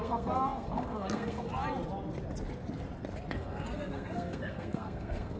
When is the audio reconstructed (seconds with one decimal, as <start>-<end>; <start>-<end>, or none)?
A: 0.0-1.5; 3.3-5.4